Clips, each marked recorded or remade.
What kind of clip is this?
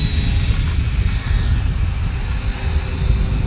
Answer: recorded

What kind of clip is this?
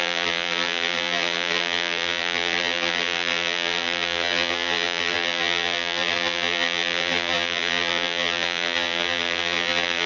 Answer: remade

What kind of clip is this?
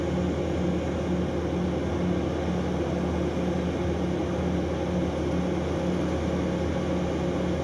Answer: recorded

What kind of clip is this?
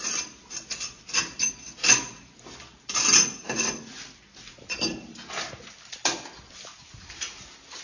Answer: recorded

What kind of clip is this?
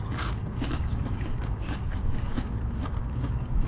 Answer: remade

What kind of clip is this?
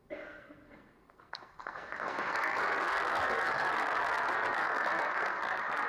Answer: remade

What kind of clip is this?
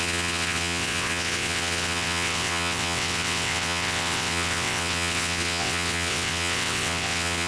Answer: remade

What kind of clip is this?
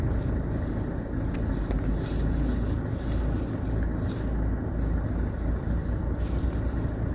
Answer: recorded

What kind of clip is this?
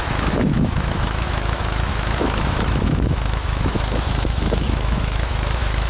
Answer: remade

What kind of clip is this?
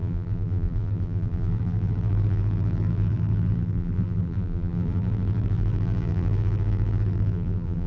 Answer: remade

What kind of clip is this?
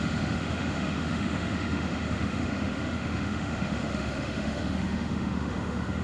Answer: remade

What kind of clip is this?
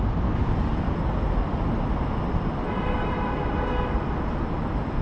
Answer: recorded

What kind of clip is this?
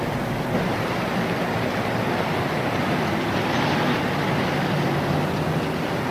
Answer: recorded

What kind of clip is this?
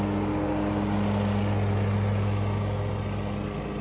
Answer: recorded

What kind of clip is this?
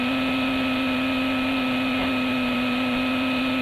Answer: recorded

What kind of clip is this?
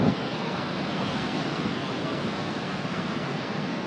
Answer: remade